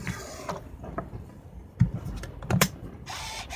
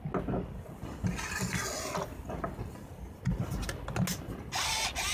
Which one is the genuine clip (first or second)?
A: second